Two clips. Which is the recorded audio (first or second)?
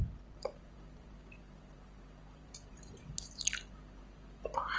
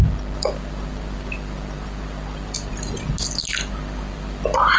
second